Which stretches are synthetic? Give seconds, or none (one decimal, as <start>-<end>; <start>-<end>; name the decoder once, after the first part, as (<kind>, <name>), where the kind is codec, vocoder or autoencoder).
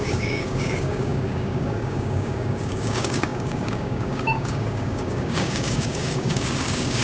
0.0-7.0 (codec, DAC)